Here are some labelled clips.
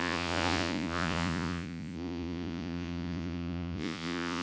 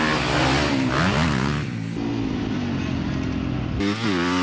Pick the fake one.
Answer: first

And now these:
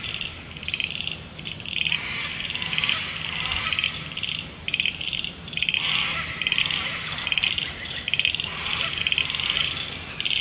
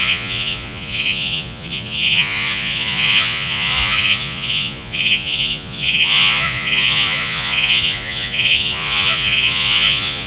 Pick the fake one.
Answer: second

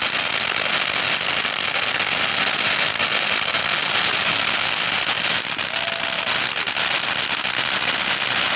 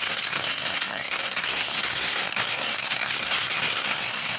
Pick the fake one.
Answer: second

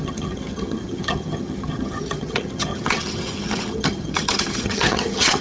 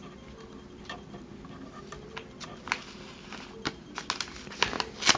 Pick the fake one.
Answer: first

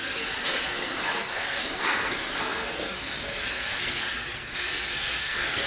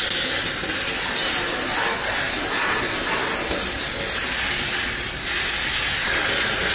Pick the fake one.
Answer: first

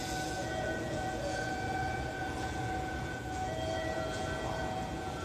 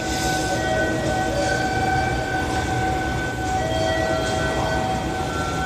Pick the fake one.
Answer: first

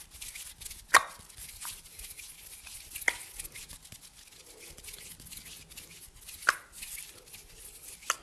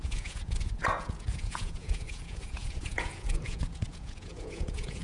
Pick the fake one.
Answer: second